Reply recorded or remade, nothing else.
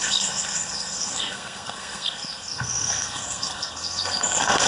remade